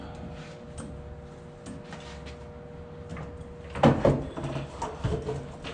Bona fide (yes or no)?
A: yes